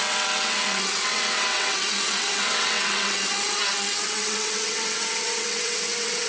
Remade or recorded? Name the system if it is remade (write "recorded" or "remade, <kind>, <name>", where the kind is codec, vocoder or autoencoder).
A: remade, vocoder, WaveNeXt